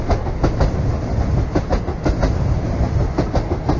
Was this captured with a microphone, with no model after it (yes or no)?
yes